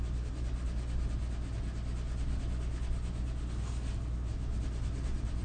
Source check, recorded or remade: recorded